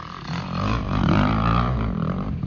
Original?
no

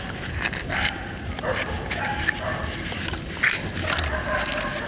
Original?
yes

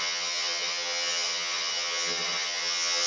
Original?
no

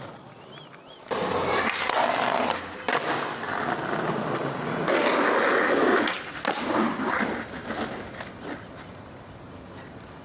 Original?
yes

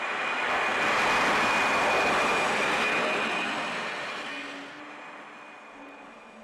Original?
yes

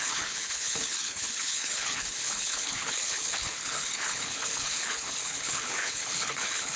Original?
no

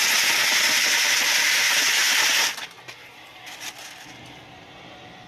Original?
yes